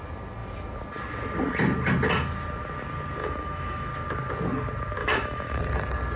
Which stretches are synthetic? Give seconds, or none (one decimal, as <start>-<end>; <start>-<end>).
3.2-3.9; 5.0-5.6